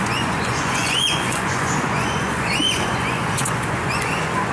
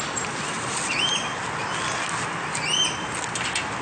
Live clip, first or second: second